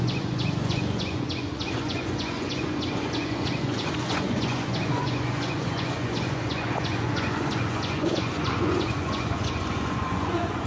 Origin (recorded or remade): remade